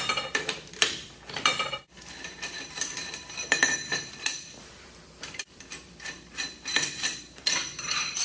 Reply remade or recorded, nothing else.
remade